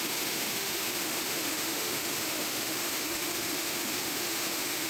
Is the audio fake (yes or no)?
yes